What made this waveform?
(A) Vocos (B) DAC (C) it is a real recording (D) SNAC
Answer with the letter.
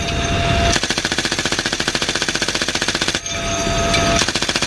C